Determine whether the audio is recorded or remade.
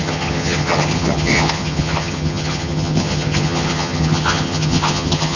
remade